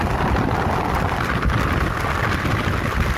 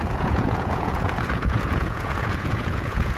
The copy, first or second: second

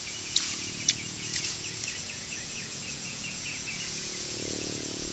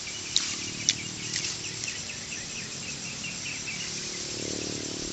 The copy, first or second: first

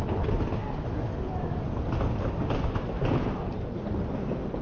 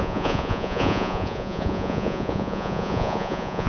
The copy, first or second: second